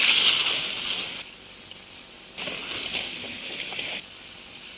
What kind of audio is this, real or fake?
real